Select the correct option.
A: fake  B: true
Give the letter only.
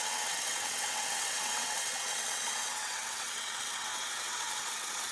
A